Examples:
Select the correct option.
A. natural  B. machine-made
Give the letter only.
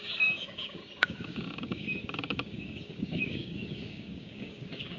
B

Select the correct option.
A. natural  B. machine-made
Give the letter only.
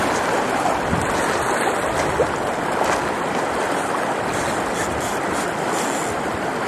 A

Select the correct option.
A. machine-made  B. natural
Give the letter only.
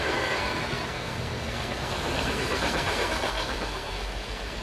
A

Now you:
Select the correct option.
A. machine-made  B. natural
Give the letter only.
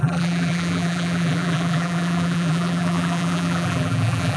A